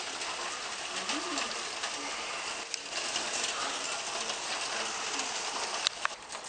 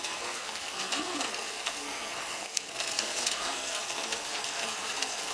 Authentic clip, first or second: first